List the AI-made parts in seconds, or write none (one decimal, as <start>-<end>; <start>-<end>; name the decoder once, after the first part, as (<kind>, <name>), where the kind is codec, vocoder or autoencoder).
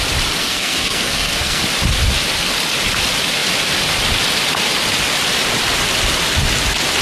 0.4-1.6 (codec, SNAC)